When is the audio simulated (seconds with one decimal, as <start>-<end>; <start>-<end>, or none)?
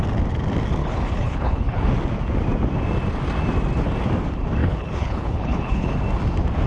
0.8-1.9; 4.6-6.0